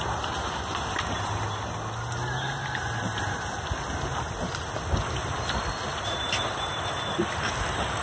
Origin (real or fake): real